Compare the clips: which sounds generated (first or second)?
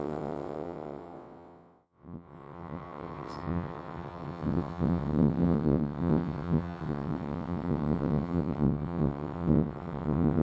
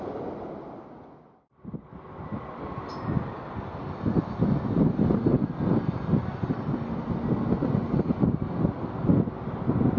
first